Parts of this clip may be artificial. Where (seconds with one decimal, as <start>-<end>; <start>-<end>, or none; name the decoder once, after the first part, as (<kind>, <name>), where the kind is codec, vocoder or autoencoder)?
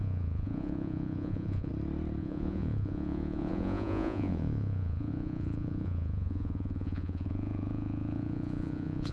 0.0-1.7 (vocoder, Vocos); 2.2-9.1